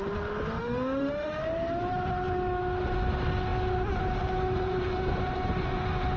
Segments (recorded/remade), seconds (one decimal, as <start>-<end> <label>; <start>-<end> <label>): 0.0-0.6 recorded; 0.6-1.4 remade; 1.4-6.2 recorded

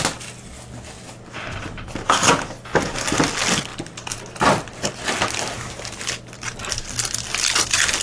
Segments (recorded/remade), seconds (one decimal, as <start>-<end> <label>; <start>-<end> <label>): 0.0-8.0 recorded

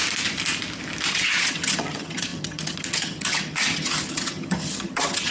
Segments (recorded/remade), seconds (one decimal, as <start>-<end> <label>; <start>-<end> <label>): 0.0-1.1 recorded; 1.1-5.3 remade

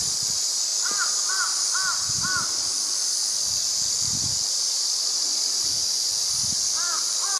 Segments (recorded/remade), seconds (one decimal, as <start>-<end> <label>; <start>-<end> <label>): 0.0-7.4 recorded

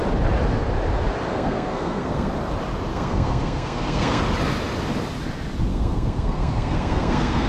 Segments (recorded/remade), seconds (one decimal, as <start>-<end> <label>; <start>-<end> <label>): 0.0-1.3 recorded; 1.3-2.3 remade; 2.3-2.9 recorded; 2.9-4.2 remade; 4.2-5.7 recorded; 5.7-7.5 remade

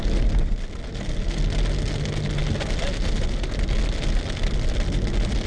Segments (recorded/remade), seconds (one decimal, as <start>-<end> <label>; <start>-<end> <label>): 0.0-5.5 recorded

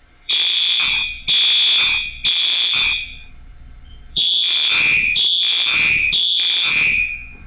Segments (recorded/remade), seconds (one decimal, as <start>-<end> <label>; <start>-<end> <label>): 0.0-1.0 remade; 1.0-2.3 recorded; 2.3-7.5 remade